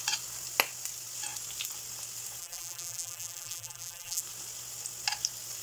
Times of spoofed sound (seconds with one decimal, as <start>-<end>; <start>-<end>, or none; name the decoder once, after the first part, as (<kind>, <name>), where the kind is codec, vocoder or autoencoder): 2.4-4.2 (vocoder, BigVGAN v2)